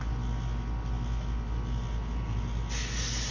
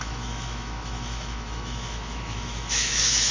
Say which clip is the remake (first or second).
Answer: second